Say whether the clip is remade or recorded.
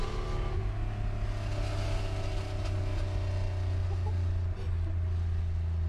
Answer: recorded